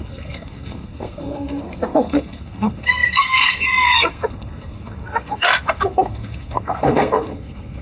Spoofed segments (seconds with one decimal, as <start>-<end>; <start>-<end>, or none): 0.0-7.8